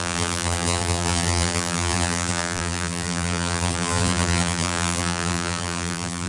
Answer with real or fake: fake